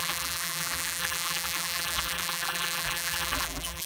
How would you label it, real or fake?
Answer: fake